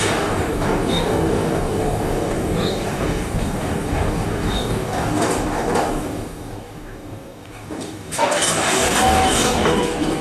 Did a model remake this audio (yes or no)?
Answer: yes